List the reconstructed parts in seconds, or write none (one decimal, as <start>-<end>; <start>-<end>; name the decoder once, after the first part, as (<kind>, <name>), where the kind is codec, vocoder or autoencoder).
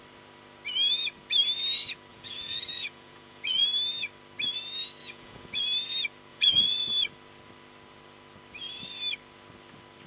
2.1-3.6 (vocoder, Vocos); 5.0-5.6; 6.3-6.9